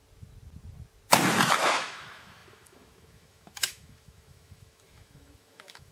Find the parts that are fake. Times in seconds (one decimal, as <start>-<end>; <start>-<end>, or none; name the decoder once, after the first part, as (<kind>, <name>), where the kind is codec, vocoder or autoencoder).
1.5-5.9 (autoencoder, DAC-VAE)